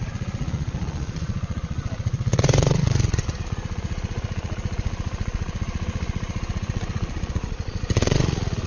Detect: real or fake fake